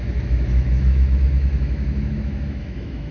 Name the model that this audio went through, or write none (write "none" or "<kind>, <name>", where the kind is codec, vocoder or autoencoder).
autoencoder, DAC-VAE